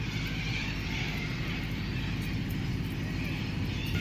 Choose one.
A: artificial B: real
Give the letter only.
B